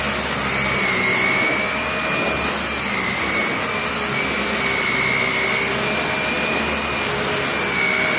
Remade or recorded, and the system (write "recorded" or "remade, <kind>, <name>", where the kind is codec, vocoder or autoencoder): recorded